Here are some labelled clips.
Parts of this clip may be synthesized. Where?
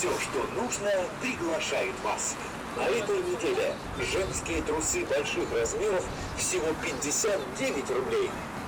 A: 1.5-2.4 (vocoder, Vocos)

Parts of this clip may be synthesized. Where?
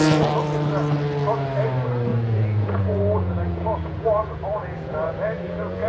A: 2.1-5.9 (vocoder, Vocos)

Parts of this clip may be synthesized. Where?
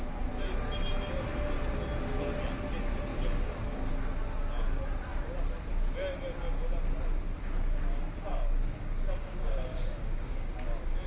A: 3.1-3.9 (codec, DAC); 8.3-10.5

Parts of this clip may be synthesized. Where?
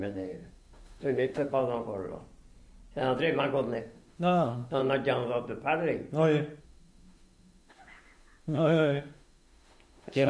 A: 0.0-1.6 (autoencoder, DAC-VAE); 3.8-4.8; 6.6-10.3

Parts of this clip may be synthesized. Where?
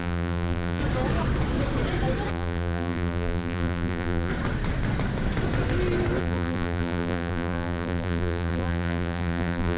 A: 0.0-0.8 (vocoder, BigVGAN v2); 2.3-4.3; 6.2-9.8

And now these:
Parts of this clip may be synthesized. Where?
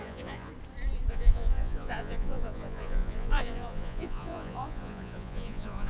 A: 0.0-0.5 (vocoder, Vocos); 1.1-5.9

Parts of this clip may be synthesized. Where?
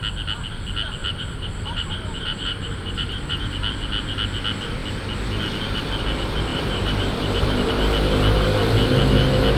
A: 1.0-3.5 (vocoder, BigVGAN v2); 6.5-7.7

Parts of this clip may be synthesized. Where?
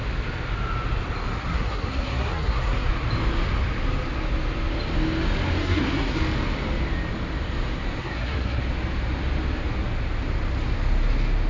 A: 1.4-2.9 (codec, SNAC); 5.6-6.2; 8.0-8.6